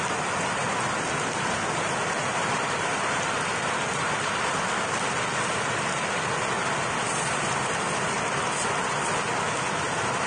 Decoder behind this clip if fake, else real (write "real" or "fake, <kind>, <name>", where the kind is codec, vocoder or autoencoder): real